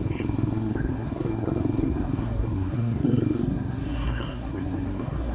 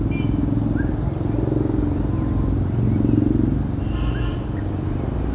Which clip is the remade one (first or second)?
first